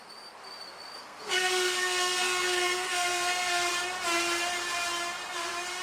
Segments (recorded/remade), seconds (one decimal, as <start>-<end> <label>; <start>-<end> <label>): 0.0-1.0 recorded; 1.0-3.7 remade; 3.7-5.8 recorded